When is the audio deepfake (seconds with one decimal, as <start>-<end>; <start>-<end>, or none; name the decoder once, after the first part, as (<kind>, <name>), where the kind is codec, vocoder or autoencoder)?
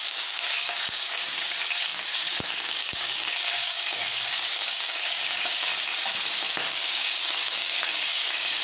0.0-5.7 (codec, DAC); 6.6-8.6